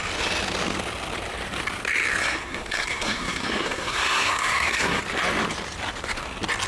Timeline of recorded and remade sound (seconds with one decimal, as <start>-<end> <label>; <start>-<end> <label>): 0.0-2.2 recorded; 2.2-5.0 remade; 5.0-6.7 recorded